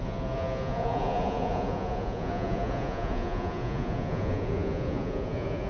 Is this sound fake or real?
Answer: fake